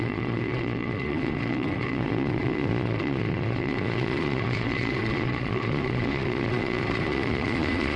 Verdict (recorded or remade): remade